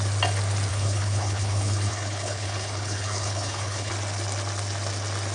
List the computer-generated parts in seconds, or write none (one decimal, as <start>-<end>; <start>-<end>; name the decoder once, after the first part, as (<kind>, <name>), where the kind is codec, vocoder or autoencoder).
0.7-3.9 (codec, HILCodec)